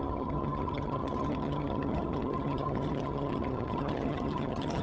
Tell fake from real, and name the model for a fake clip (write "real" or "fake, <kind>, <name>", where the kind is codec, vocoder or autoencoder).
fake, vocoder, HiFi-GAN